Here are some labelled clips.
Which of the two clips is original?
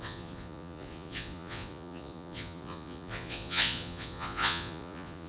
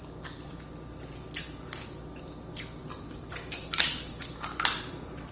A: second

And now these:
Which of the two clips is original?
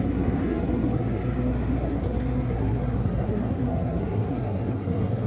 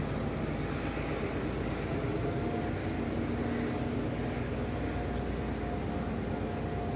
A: second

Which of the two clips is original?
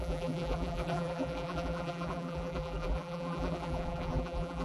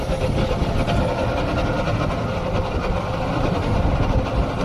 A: second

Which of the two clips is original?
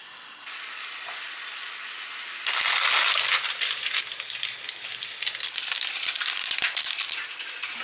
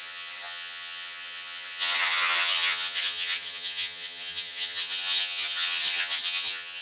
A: first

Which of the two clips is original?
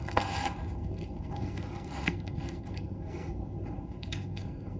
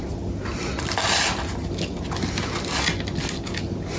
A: second